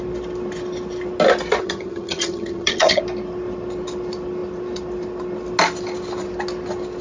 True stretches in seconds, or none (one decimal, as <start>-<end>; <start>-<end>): 0.0-1.6; 3.0-7.0